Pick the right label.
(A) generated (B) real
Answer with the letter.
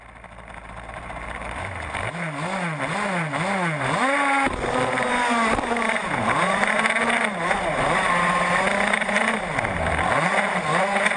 B